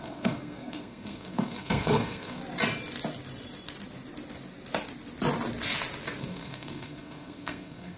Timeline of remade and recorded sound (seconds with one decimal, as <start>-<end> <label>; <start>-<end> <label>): 0.0-2.4 remade; 2.4-6.2 recorded; 6.2-8.0 remade